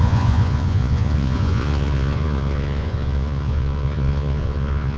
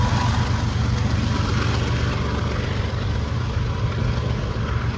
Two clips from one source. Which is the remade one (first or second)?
first